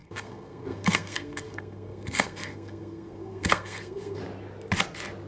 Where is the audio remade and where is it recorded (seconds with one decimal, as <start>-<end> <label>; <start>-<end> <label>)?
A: 0.0-4.2 remade; 4.2-5.3 recorded